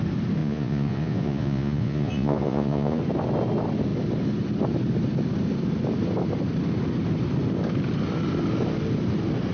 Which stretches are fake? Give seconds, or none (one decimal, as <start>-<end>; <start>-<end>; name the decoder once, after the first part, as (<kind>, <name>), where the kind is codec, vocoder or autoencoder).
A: 0.4-3.0 (vocoder, Vocos)